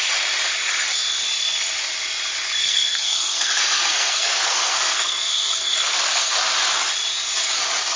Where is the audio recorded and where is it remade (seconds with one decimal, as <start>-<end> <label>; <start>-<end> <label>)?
0.0-2.6 recorded; 2.6-6.3 remade; 6.3-8.0 recorded